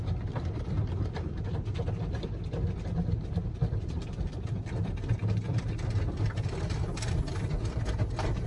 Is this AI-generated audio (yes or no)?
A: no